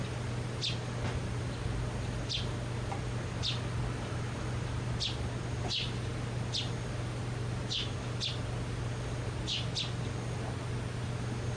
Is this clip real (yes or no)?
yes